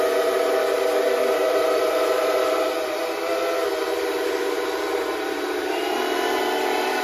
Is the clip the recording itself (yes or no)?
no